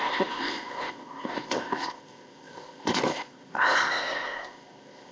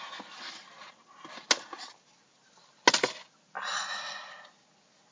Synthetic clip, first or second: first